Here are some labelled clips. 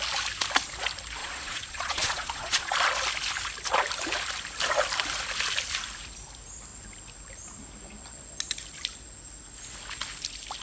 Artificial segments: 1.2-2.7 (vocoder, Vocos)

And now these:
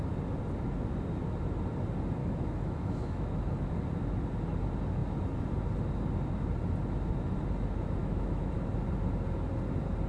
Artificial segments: 2.2-3.7 (autoencoder, DAC-VAE); 8.0-8.6

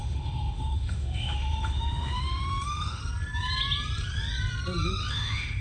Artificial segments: 0.0-3.0 (autoencoder, DAC-VAE); 5.1-5.6

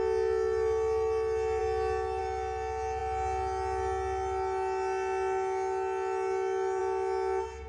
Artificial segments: none

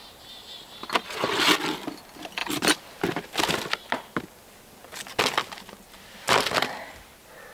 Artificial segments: none